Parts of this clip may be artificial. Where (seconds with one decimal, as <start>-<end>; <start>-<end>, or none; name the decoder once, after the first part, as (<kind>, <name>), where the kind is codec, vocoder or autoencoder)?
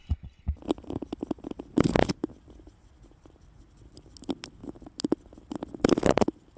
none